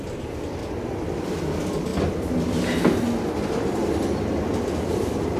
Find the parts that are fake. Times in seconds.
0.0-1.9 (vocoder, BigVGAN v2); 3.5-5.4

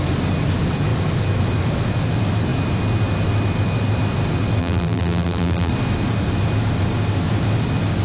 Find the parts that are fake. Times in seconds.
4.6-5.7 (vocoder, BigVGAN v2)

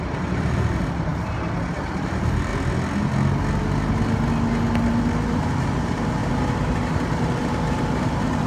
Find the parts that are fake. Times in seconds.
0.0-2.5 (vocoder, BigVGAN v2); 5.3-8.5